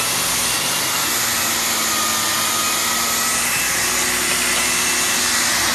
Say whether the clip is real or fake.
real